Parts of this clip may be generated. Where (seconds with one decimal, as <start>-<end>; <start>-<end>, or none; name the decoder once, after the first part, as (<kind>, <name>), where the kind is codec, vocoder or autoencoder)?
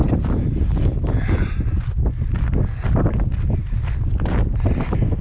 none